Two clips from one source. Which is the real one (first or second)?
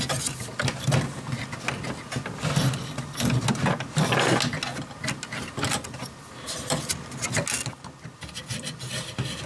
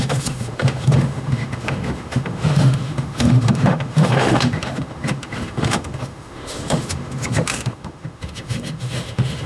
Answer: first